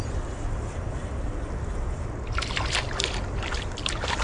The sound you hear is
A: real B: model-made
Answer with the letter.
A